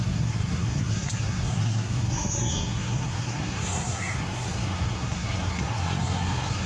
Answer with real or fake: fake